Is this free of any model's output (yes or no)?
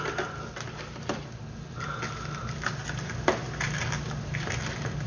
yes